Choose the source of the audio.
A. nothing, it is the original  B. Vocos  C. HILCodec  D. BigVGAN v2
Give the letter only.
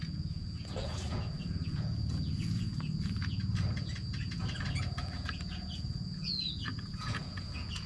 B